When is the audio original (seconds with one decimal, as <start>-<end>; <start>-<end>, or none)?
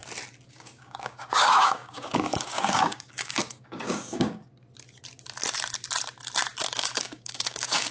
0.0-0.5; 4.4-6.8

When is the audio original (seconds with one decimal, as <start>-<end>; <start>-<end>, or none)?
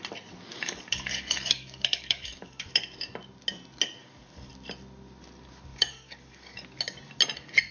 0.0-0.5; 2.8-4.0; 4.5-5.7; 6.8-7.7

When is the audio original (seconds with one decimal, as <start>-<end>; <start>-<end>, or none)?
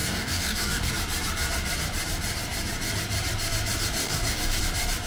0.9-4.0; 4.6-5.1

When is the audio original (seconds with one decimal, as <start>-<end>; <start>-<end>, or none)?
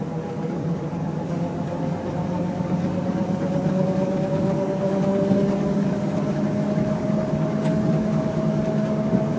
none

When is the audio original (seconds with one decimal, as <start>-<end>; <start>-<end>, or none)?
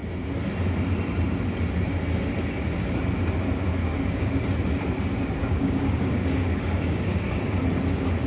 0.0-3.8; 4.3-5.4; 7.6-8.3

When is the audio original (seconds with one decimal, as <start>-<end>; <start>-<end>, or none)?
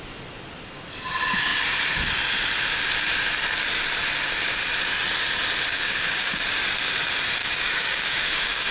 0.0-5.7; 6.4-7.4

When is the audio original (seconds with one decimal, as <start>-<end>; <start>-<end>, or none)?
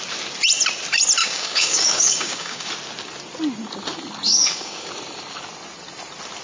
0.0-1.2; 2.7-4.3; 4.9-6.4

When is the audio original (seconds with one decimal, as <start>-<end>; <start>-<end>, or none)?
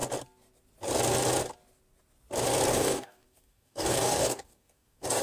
0.0-2.7